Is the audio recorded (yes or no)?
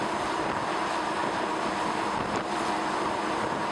yes